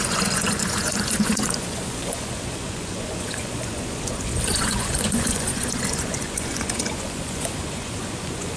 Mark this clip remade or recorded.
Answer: remade